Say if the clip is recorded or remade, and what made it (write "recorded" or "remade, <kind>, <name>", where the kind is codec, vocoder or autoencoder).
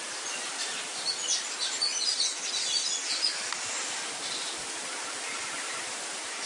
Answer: recorded